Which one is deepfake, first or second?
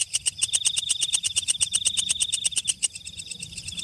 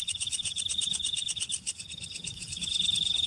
second